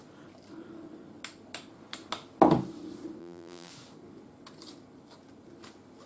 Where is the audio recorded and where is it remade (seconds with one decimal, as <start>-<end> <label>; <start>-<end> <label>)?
0.0-3.2 recorded; 3.2-3.7 remade; 3.7-6.1 recorded

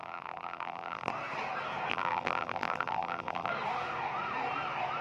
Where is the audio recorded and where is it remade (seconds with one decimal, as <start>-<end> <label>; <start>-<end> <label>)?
0.0-1.1 remade; 1.1-1.9 recorded; 1.9-3.5 remade; 3.5-5.0 recorded